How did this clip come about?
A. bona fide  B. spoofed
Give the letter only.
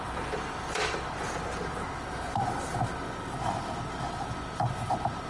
B